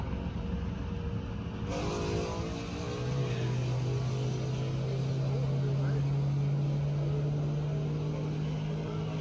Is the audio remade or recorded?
recorded